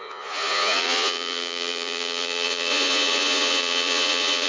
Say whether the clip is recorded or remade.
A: remade